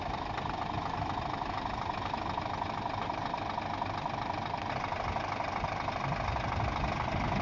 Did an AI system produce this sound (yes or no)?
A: no